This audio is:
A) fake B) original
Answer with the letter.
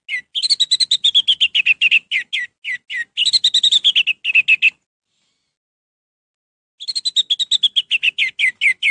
B